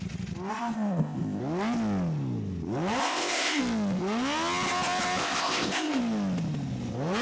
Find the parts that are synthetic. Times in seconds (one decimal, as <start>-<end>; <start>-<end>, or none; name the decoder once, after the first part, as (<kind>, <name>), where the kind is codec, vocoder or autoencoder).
0.5-1.4 (codec, ZipCodec); 3.0-3.6; 5.2-6.0

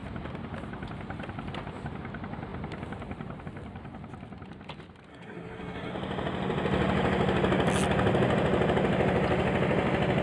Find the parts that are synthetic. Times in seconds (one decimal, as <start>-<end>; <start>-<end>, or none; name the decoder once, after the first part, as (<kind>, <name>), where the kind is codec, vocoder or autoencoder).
5.1-5.9 (codec, SNAC)

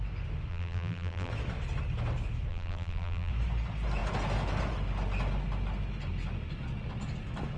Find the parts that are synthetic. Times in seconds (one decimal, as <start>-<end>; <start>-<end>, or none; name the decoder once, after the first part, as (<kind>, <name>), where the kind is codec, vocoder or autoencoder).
0.5-1.3 (vocoder, BigVGAN v2); 2.5-3.3